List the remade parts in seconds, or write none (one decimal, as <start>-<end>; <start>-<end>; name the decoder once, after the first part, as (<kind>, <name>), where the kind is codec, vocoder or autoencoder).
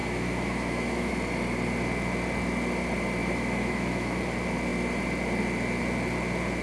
0.0-1.1 (autoencoder, DAC-VAE); 3.2-4.2